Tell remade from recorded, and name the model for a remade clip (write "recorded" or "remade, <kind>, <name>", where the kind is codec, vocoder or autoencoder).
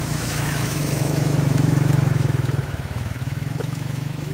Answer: remade, autoencoder, DAC-VAE